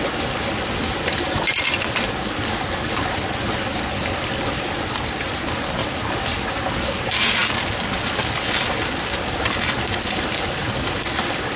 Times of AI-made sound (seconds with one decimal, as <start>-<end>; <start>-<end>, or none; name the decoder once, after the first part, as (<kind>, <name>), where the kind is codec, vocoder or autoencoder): none